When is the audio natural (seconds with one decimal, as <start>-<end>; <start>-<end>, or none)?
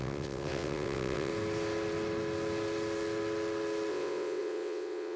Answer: 1.3-3.9